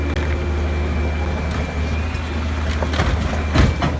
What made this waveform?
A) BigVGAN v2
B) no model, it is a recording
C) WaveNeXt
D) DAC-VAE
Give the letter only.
B